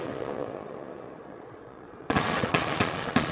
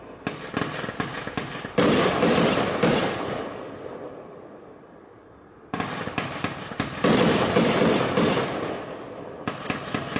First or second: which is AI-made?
first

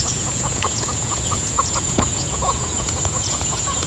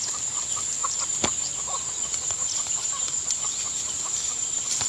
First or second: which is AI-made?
first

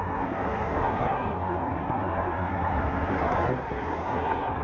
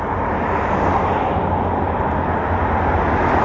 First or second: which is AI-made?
first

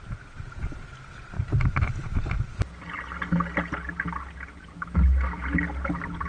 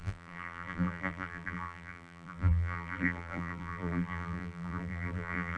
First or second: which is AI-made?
second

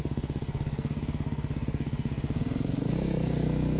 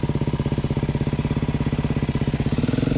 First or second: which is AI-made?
first